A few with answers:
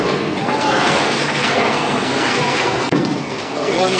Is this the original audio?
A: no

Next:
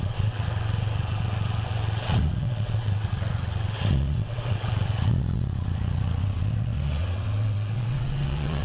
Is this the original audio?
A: no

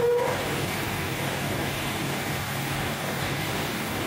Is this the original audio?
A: no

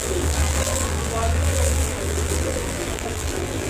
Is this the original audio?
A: no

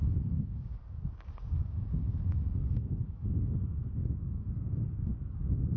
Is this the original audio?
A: no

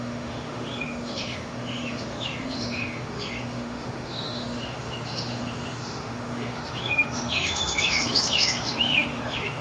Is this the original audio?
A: no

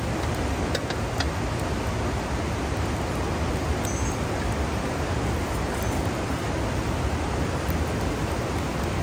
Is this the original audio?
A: yes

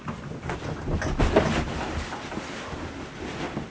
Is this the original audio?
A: yes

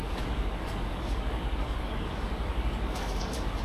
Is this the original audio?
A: no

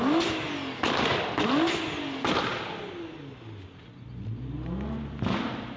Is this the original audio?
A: yes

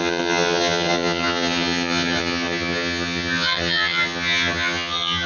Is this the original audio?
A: no